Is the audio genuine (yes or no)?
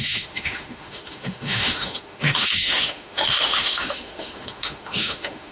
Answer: no